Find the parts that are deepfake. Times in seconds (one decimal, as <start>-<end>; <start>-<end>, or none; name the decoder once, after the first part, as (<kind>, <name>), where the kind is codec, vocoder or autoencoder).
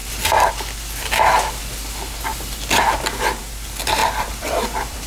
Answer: 4.0-5.1 (vocoder, BigVGAN v2)